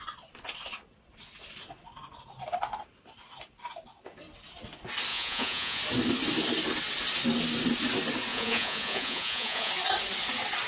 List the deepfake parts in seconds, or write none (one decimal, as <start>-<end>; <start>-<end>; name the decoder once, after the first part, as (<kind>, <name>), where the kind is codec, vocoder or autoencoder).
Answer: 5.1-5.8 (vocoder, Vocos); 8.3-9.7